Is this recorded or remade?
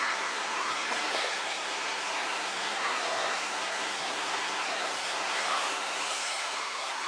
remade